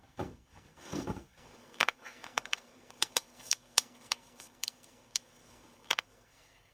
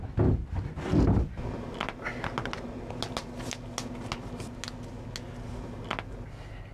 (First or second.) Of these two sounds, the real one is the second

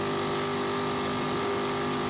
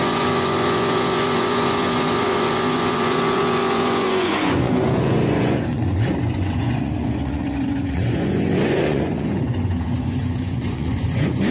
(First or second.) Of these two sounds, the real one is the first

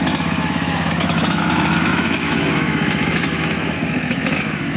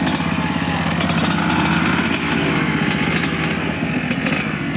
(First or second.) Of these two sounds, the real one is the second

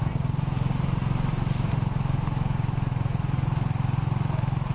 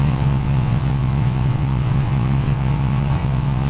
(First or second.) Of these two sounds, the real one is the first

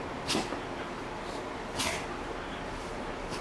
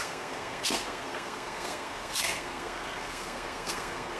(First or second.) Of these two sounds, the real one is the first